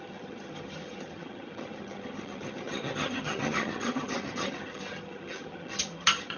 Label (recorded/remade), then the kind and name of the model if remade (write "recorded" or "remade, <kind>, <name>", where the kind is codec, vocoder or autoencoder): remade, vocoder, HiFi-GAN